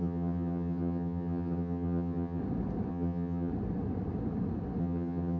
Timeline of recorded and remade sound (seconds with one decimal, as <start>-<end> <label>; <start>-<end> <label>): 0.0-2.4 remade; 2.4-2.9 recorded; 2.9-3.5 remade; 3.5-4.8 recorded; 4.8-5.4 remade